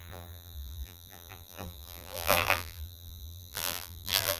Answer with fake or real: fake